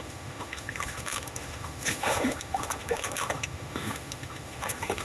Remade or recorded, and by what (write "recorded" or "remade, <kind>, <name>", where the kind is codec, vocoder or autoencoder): remade, autoencoder, DAC-VAE